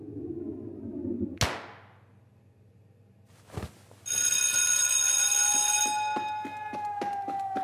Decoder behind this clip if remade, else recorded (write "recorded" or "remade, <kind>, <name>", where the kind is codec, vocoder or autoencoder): recorded